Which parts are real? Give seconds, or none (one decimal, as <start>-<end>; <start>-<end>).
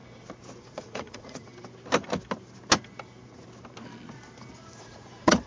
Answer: 0.0-0.6; 1.5-4.8